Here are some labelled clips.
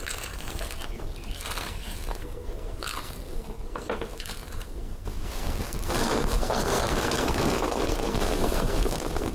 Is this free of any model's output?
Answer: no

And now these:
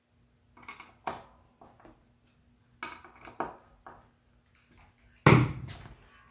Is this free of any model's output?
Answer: yes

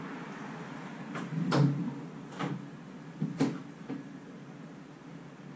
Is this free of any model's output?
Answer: yes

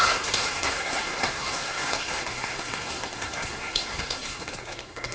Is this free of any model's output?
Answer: no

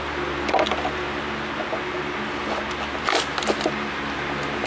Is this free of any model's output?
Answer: yes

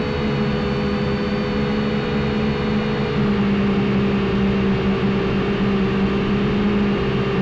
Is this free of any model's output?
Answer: yes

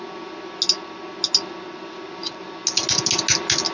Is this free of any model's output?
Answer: yes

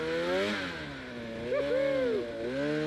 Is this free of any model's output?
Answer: yes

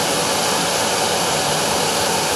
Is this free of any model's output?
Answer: yes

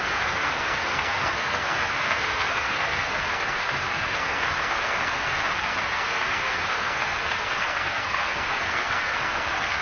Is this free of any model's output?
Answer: no